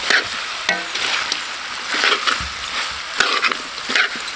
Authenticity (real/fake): real